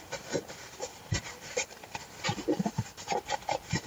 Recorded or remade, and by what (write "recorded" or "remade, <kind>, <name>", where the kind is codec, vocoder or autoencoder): remade, vocoder, BigVGAN v2